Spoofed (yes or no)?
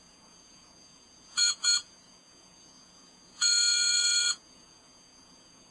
yes